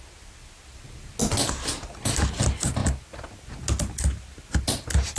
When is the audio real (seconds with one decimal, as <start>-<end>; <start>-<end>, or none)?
0.0-5.2